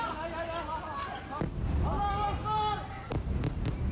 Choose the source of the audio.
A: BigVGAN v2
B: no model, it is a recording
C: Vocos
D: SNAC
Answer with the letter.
B